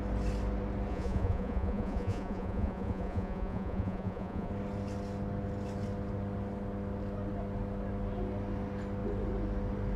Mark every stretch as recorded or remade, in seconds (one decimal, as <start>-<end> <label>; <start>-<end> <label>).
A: 0.0-0.9 recorded; 0.9-4.5 remade; 4.5-10.0 recorded